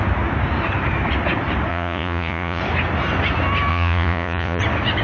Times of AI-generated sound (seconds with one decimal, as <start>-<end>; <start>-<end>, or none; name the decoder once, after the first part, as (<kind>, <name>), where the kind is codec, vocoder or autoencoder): 1.7-2.6 (vocoder, Vocos); 3.7-4.6